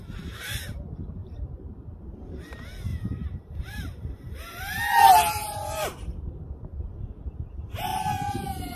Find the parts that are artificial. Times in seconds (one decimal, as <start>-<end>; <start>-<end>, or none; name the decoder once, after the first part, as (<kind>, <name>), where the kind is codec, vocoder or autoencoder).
1.2-2.4 (vocoder, BigVGAN v2); 2.9-7.0